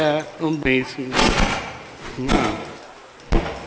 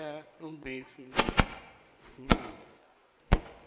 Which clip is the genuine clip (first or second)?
first